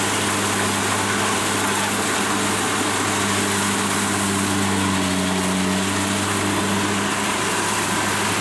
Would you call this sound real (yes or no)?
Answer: yes